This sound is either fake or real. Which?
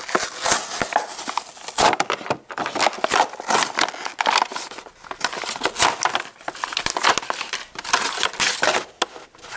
real